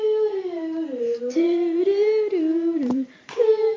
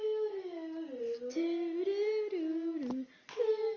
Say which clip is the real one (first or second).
second